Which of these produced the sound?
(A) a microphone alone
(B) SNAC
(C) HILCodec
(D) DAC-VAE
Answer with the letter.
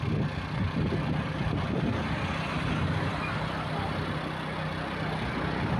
A